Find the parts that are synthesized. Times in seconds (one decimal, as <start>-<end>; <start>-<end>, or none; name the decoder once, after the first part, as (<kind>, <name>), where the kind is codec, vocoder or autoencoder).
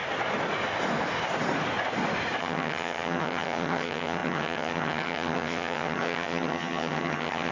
2.4-7.5 (vocoder, HiFi-GAN)